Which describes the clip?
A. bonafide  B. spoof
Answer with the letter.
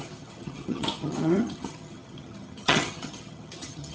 B